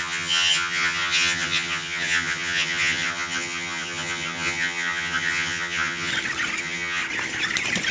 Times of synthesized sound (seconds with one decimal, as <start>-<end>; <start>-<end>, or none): 0.0-6.1; 6.6-7.0